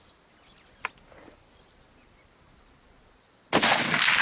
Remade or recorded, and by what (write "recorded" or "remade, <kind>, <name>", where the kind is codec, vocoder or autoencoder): recorded